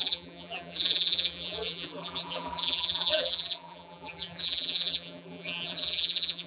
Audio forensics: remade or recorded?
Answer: remade